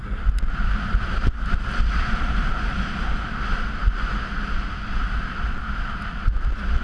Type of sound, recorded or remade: recorded